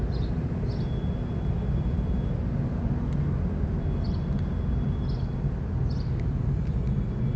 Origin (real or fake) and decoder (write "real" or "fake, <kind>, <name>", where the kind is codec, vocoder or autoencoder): real